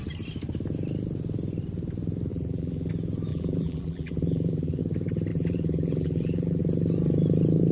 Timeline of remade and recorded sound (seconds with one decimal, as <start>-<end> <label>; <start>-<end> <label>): 0.0-2.3 recorded; 2.3-2.9 remade; 2.9-3.3 recorded; 3.3-4.8 remade; 4.8-5.3 recorded; 5.3-6.6 remade; 6.6-7.7 recorded